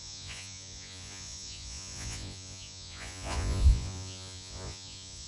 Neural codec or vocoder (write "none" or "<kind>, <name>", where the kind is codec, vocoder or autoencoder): vocoder, Vocos